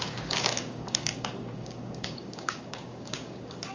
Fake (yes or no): yes